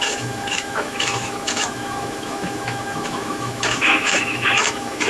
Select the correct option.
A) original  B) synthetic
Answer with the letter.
B